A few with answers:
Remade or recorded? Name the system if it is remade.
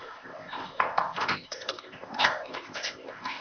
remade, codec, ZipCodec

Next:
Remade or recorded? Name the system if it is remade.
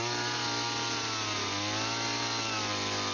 recorded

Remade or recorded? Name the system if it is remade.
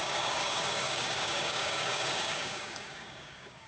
remade, codec, DAC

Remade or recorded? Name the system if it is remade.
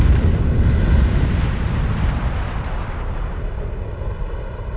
recorded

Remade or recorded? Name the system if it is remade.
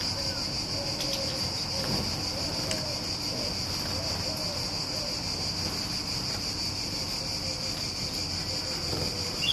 recorded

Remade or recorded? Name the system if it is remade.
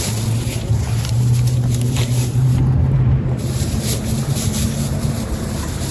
remade, vocoder, BigVGAN v2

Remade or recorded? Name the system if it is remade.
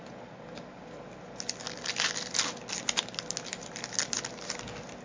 recorded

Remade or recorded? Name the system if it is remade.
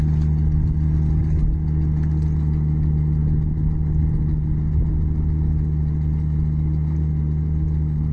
recorded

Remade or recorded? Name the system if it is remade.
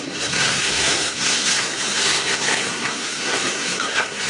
remade, codec, SNAC